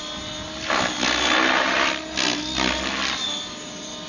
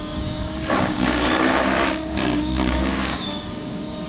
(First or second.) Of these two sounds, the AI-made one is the second